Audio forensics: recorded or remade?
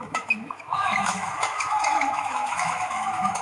remade